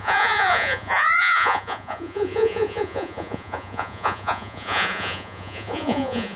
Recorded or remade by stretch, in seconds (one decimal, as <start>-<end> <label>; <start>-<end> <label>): 0.0-6.4 remade

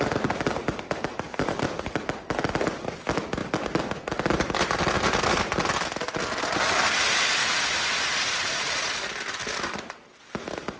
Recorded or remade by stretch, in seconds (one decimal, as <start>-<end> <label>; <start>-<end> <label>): 0.0-1.1 recorded; 1.1-2.3 remade; 2.3-7.4 recorded; 7.4-8.6 remade; 8.6-10.8 recorded